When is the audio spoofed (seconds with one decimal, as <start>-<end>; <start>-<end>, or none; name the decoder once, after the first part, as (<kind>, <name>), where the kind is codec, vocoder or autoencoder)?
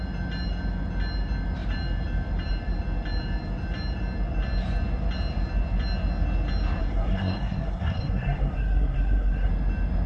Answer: 6.8-9.5 (codec, SNAC)